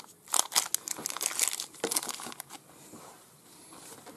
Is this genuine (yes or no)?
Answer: yes